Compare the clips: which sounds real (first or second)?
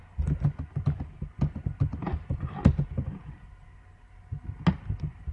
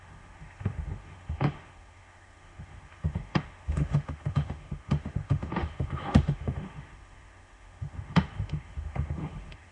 first